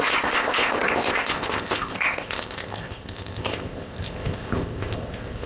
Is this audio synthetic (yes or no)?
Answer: yes